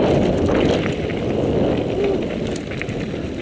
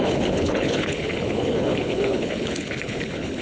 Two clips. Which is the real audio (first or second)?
first